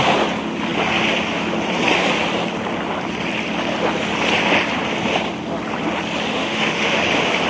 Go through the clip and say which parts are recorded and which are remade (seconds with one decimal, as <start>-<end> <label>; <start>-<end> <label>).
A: 0.0-6.3 recorded; 6.3-7.0 remade; 7.0-7.5 recorded